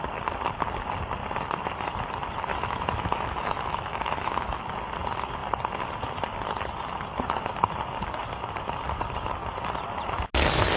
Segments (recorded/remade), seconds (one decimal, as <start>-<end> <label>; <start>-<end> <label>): 0.0-2.5 recorded; 2.5-4.6 remade; 4.6-10.8 recorded